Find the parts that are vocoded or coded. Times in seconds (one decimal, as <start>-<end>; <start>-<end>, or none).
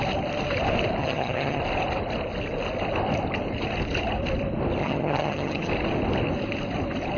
1.0-1.6; 4.8-5.7